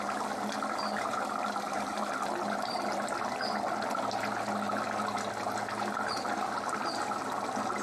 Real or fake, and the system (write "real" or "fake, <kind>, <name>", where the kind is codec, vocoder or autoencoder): real